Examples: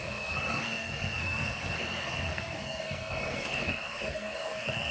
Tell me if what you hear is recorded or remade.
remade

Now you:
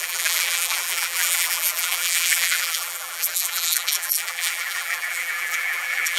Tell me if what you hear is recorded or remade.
remade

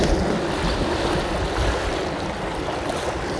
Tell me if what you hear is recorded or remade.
recorded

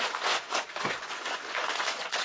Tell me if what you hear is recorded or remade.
remade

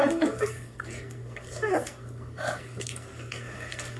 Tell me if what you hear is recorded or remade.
remade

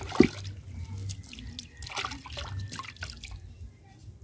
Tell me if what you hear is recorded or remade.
recorded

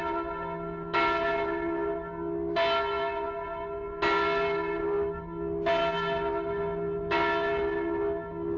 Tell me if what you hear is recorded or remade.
recorded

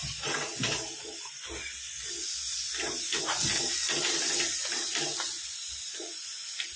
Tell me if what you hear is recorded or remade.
recorded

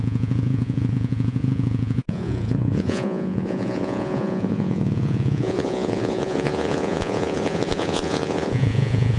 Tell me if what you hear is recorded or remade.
remade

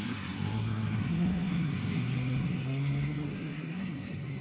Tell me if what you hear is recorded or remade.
remade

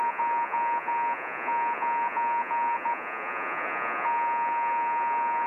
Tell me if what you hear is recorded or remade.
remade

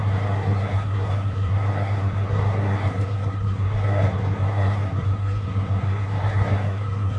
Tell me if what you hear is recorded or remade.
remade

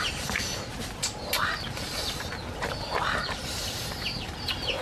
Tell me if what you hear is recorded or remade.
recorded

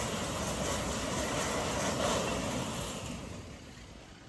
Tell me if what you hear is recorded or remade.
recorded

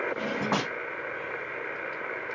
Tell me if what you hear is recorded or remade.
recorded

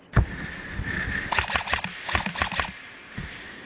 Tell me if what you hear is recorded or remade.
remade